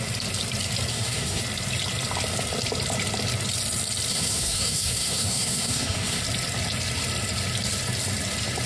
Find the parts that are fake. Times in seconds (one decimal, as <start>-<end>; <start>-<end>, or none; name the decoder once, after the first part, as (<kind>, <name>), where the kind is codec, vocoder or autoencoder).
0.9-1.4 (codec, SNAC); 4.1-6.2